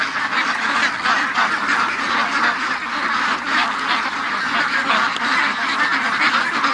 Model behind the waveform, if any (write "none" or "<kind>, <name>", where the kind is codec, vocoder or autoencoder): none